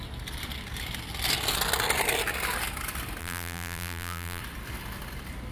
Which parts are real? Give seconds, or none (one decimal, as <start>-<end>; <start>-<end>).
0.0-3.2; 4.4-5.5